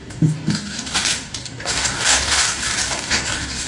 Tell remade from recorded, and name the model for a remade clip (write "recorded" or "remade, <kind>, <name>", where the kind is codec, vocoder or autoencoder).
remade, codec, DAC